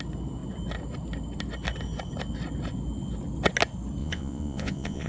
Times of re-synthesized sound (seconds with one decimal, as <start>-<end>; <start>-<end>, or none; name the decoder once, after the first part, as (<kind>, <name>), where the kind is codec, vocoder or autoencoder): 4.0-5.1 (vocoder, Vocos)